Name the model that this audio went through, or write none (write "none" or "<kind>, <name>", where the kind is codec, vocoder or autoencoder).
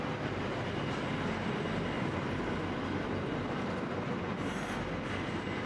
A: none